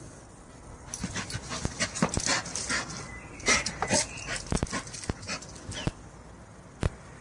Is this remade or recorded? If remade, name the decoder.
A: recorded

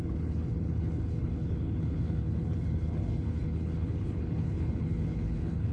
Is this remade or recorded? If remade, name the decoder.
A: remade, codec, HILCodec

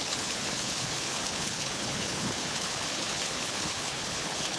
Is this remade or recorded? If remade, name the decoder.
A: remade, codec, HILCodec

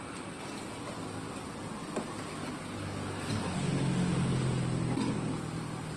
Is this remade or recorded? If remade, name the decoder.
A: recorded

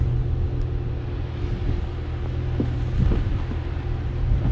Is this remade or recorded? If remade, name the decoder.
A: recorded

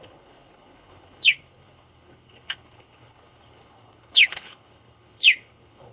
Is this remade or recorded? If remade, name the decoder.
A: remade, codec, HILCodec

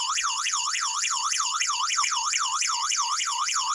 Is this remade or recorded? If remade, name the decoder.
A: remade, codec, HILCodec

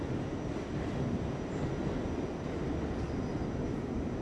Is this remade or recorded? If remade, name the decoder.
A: recorded